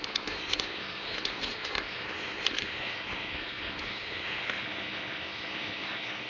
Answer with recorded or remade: remade